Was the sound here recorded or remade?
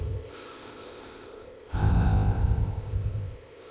remade